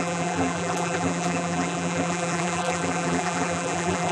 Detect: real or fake fake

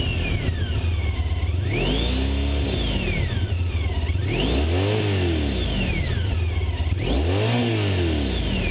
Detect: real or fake real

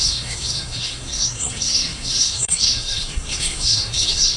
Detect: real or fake fake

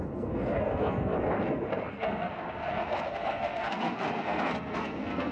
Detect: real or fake fake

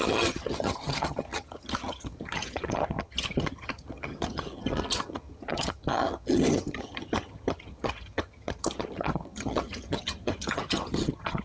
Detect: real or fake fake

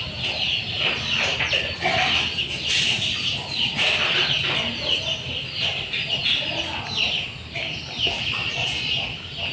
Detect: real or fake real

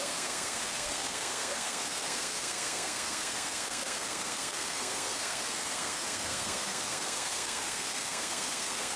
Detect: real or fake fake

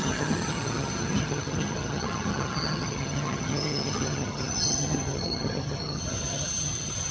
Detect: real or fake fake